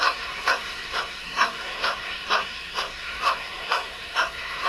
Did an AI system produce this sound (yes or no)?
yes